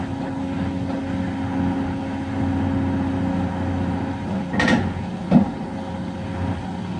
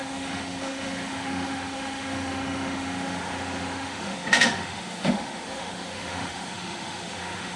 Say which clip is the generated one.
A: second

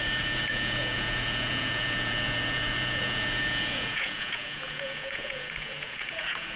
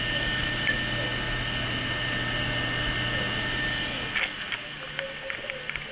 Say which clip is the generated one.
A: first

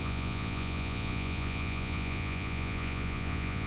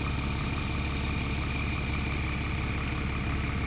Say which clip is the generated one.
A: first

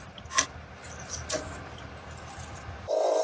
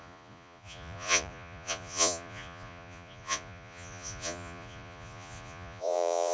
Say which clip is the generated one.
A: second